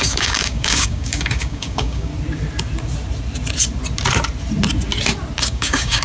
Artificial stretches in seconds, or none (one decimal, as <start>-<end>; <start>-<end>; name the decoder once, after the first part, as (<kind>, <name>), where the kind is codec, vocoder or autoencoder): 0.0-2.1 (codec, DAC); 5.4-6.0